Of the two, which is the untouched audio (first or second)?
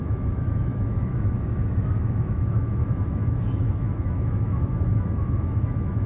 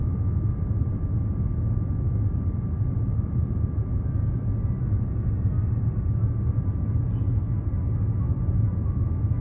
second